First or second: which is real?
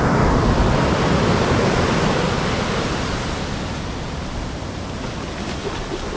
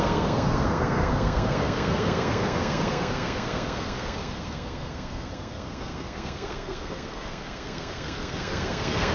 first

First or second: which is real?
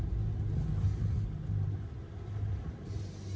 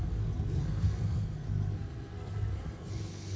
first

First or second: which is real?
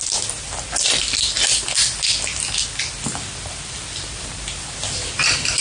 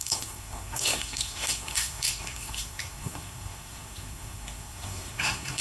first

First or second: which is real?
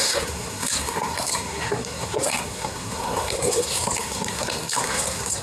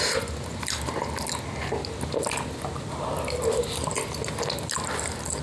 second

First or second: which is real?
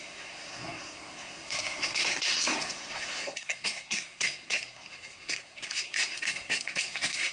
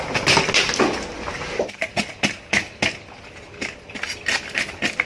second